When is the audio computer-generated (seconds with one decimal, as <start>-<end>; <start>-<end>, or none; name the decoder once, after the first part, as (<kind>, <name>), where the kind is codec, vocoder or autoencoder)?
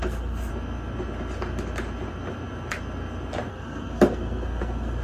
0.0-0.5 (codec, SNAC); 3.5-5.0